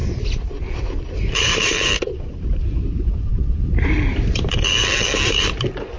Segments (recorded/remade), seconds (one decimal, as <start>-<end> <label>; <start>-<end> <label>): 0.0-1.2 recorded; 1.2-6.0 remade